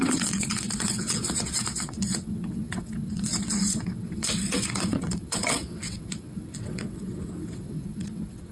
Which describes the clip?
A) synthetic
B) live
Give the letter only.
A